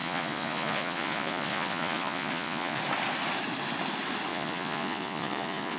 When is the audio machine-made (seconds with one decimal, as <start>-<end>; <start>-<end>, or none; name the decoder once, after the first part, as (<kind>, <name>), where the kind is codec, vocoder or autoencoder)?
0.0-2.8 (vocoder, Vocos); 4.3-5.8